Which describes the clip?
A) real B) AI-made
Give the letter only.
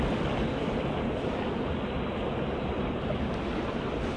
A